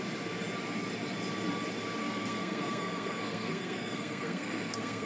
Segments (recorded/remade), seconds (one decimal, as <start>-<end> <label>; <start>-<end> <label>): 0.0-2.0 recorded; 2.0-5.1 remade

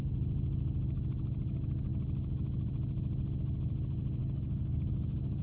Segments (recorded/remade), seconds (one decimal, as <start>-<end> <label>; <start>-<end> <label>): 0.0-4.2 recorded; 4.2-5.4 remade

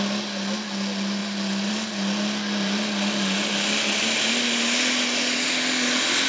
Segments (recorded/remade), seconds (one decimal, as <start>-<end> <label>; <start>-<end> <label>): 0.0-6.3 recorded

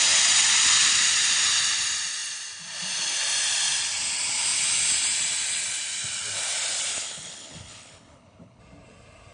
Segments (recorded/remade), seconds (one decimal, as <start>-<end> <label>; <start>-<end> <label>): 0.0-6.9 recorded; 6.9-8.6 remade; 8.6-9.3 recorded

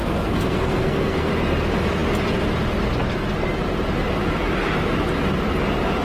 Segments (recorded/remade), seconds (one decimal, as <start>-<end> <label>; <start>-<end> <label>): 0.0-1.3 remade; 1.3-6.0 recorded

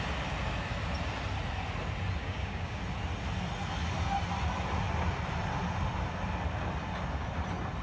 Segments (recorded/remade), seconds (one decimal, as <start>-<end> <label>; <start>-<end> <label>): 0.0-2.2 recorded; 2.2-2.8 remade; 2.8-7.8 recorded

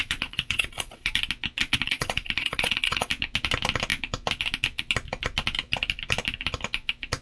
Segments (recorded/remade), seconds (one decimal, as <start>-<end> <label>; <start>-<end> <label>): 0.0-1.1 remade; 1.1-1.6 recorded; 1.6-3.1 remade; 3.1-7.2 recorded